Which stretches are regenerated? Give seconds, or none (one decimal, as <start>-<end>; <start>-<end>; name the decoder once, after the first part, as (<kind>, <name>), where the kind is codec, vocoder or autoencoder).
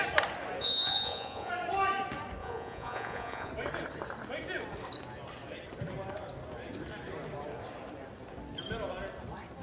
0.6-1.5 (vocoder, Vocos); 2.4-3.5